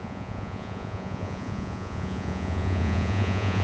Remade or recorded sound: remade